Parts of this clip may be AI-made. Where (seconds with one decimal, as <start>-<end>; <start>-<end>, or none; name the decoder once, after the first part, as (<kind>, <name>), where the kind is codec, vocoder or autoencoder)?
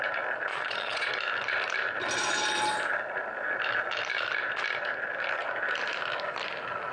0.5-1.1 (vocoder, Vocos)